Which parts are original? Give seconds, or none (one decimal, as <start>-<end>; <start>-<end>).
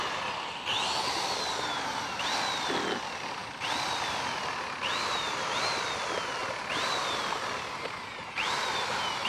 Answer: 0.0-6.4; 7.2-9.3